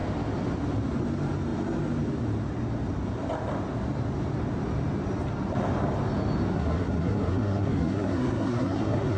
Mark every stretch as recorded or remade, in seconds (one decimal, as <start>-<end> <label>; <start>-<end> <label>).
0.0-6.5 recorded; 6.5-9.2 remade